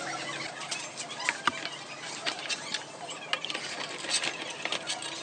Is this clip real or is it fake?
real